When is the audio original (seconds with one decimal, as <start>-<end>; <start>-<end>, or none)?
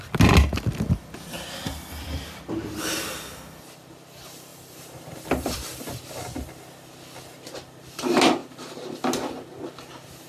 0.0-4.5; 6.0-10.3